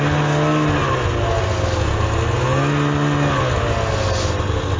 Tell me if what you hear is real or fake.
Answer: real